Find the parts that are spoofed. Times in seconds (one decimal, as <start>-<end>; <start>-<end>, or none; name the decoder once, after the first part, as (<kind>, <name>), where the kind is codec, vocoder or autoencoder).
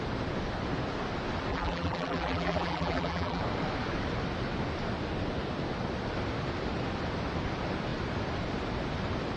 1.5-3.4 (vocoder, BigVGAN v2)